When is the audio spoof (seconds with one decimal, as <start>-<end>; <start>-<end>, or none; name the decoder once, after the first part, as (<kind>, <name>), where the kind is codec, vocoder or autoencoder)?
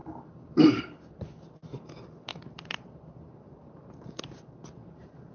0.0-1.0 (vocoder, BigVGAN v2); 2.3-4.1; 4.6-5.3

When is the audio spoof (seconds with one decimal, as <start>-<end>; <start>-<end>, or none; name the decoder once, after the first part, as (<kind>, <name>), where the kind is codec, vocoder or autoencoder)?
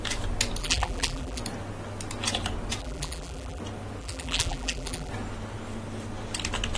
0.6-1.4 (vocoder, BigVGAN v2); 2.8-3.6; 4.0-5.1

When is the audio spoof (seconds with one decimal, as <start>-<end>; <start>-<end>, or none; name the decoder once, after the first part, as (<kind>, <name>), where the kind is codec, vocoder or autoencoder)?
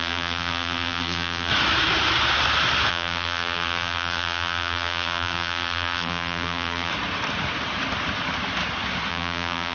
0.0-1.5 (vocoder, BigVGAN v2); 2.9-6.9; 9.1-9.7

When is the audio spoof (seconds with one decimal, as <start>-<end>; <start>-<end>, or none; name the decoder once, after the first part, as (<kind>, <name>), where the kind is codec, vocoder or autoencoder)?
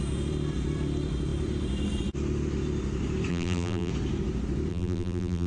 3.3-3.9 (vocoder, BigVGAN v2); 4.7-5.5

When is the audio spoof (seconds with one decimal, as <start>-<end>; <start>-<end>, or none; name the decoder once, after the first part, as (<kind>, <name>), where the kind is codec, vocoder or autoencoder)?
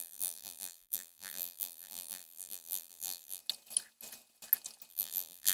0.0-3.4 (vocoder, BigVGAN v2); 4.9-5.5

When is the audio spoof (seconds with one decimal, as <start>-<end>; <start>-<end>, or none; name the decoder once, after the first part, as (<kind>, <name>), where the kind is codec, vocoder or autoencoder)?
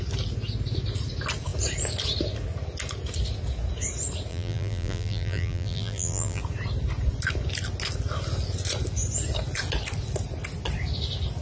4.3-6.4 (vocoder, BigVGAN v2)